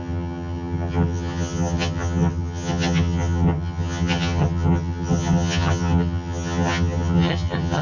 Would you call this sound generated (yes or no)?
yes